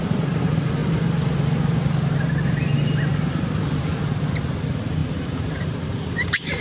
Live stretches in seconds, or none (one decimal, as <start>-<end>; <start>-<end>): 0.0-5.0